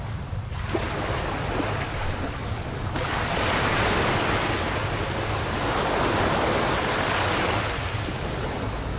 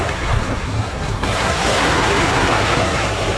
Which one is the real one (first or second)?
first